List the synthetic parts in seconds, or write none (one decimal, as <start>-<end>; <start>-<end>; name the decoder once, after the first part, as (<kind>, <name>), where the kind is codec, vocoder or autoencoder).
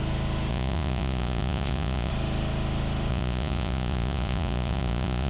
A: 0.5-2.1 (vocoder, Vocos); 3.1-5.3